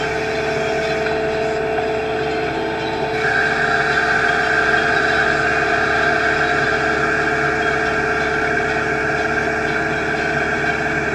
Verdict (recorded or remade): remade